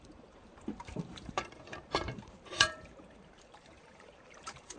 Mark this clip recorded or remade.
remade